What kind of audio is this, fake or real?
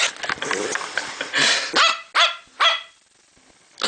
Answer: real